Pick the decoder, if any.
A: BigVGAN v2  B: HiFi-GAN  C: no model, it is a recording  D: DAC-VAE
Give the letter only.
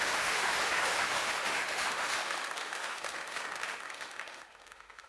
D